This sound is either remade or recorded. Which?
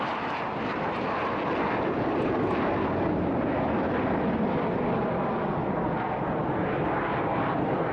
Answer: recorded